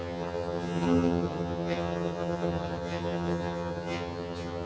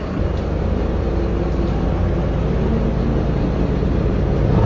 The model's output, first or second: first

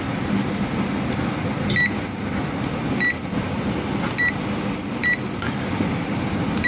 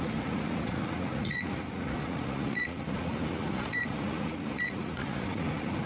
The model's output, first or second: second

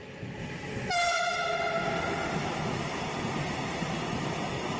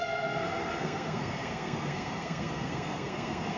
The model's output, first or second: second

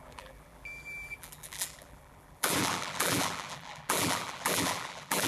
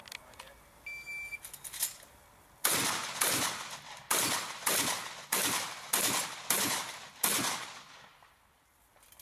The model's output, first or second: first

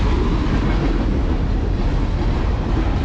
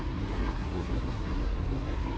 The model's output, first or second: second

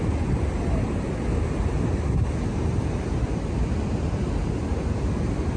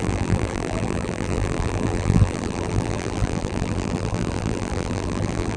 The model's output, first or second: second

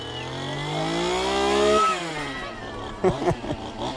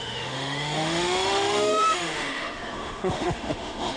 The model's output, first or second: second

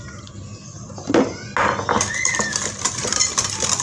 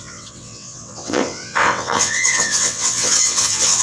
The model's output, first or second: second